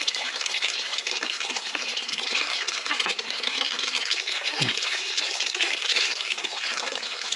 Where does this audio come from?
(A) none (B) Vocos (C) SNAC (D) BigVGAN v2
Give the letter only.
C